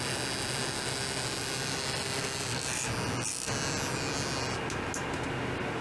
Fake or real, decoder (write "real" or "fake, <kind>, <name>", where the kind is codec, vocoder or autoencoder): real